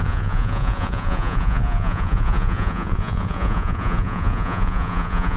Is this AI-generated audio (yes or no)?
yes